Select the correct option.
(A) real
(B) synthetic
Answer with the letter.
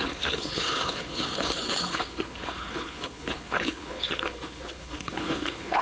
B